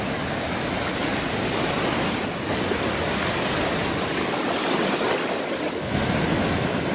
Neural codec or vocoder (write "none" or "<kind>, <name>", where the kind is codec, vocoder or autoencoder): none